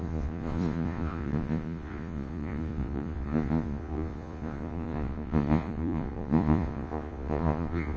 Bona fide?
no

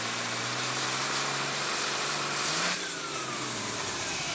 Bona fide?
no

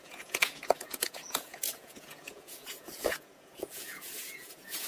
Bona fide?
no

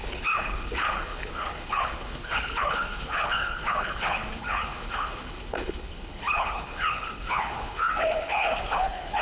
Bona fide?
no